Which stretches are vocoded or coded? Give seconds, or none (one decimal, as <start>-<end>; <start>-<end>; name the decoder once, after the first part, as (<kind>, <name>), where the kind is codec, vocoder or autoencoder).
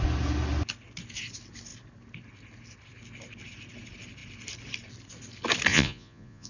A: 5.7-6.5 (vocoder, Vocos)